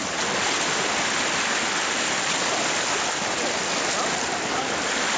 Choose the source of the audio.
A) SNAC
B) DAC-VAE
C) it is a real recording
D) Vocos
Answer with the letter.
C